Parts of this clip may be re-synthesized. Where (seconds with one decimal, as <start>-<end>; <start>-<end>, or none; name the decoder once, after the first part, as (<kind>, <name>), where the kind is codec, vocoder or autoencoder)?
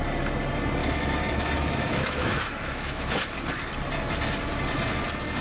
0.8-3.3 (autoencoder, DAC-VAE)